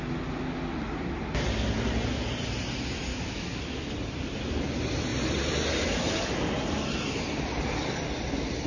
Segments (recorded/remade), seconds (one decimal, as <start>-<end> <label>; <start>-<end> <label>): 0.0-3.1 recorded; 3.1-3.9 remade; 3.9-8.7 recorded